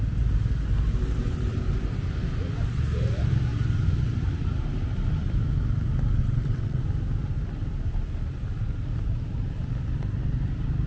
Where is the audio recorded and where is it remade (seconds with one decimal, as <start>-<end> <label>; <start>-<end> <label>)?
0.0-6.2 recorded; 6.2-6.8 remade; 6.8-10.9 recorded